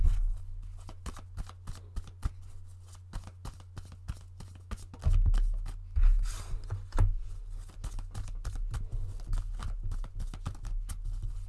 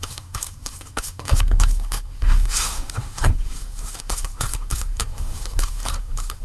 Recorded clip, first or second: first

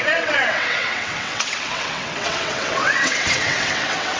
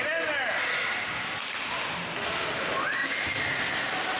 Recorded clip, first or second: second